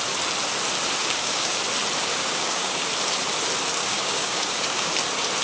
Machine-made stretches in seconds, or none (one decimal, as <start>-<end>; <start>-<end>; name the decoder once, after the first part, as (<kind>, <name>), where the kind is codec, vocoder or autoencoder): 1.0-1.6 (codec, DAC); 2.1-2.9; 3.8-4.9